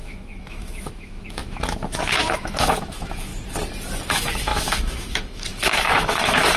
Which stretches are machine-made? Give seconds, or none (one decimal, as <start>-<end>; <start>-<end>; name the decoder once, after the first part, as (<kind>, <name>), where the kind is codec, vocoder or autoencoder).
0.0-3.3 (autoencoder, DAC-VAE); 4.1-6.6